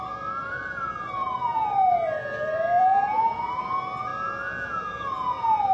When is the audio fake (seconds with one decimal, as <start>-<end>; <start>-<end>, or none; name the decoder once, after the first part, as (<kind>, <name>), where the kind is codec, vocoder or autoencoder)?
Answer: 0.4-3.6 (vocoder, BigVGAN v2)